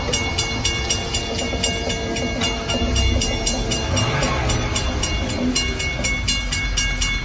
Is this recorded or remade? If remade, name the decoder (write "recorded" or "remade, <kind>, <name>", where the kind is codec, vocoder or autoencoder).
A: recorded